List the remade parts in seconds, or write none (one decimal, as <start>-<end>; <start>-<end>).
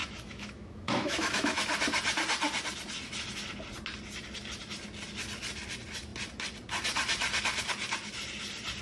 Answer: 0.0-1.6